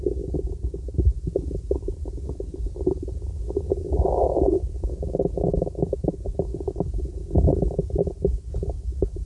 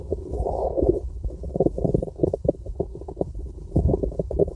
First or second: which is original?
first